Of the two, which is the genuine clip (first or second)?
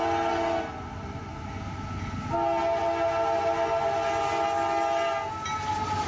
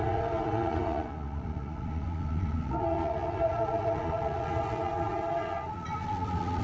first